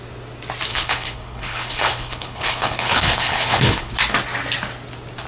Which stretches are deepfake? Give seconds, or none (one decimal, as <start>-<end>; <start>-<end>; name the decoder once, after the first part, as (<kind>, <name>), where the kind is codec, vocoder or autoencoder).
0.7-3.9 (codec, HILCodec)